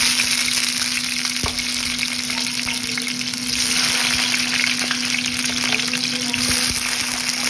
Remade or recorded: recorded